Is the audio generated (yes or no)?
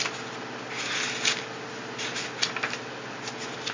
no